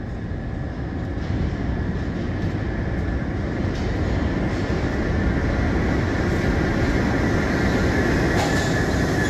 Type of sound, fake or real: real